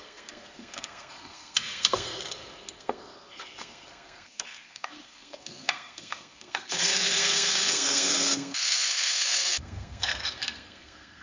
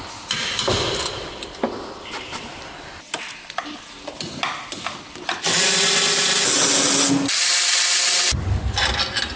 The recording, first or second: second